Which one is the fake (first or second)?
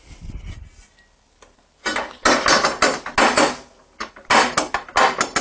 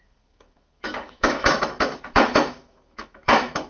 second